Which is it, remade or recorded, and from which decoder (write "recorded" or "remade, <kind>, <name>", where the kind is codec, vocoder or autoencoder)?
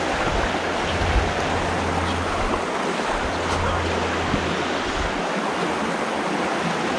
recorded